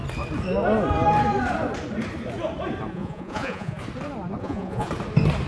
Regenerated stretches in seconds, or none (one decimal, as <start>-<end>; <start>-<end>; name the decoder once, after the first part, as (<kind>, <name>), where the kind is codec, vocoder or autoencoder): 2.9-3.8 (vocoder, Vocos); 4.4-4.9